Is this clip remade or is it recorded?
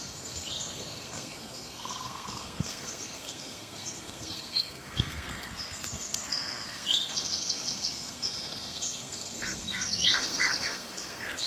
remade